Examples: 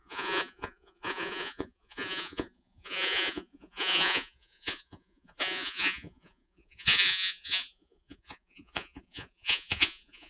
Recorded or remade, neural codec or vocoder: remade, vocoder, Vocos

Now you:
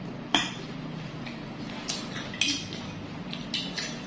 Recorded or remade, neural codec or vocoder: recorded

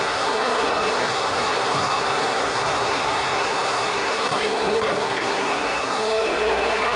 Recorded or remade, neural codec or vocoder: remade, codec, SNAC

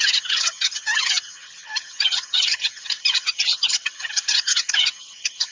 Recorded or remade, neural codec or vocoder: remade, vocoder, HiFi-GAN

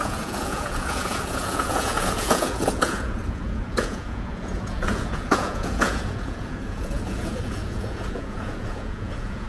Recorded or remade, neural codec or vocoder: remade, vocoder, Vocos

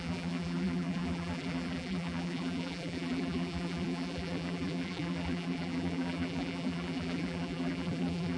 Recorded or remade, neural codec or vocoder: remade, vocoder, BigVGAN v2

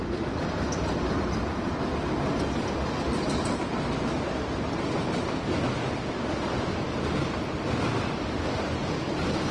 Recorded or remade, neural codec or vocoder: recorded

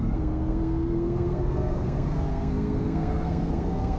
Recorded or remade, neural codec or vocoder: remade, codec, SNAC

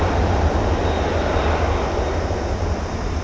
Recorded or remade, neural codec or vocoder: recorded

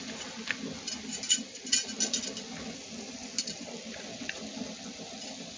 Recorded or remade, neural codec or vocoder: recorded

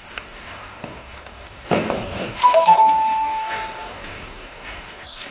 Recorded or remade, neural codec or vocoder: remade, codec, DAC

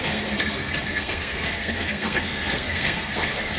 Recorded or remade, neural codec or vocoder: remade, codec, SNAC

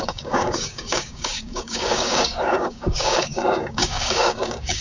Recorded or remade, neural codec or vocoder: remade, codec, DAC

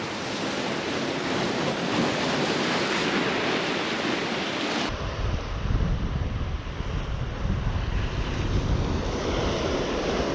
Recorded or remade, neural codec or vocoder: recorded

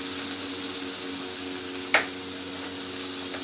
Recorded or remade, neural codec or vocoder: recorded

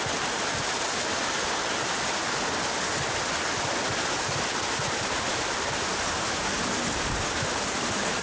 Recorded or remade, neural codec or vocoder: recorded